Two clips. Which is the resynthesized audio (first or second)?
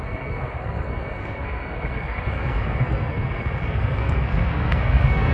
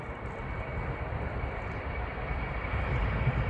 first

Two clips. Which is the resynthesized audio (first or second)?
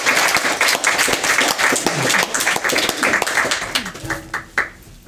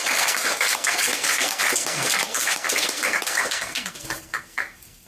second